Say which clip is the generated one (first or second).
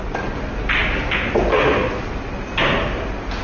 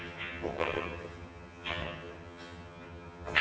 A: second